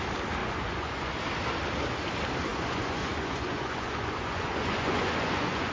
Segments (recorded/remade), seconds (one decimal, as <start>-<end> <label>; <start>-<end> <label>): 0.0-0.4 recorded; 0.4-1.1 remade; 1.1-2.5 recorded; 2.5-5.7 remade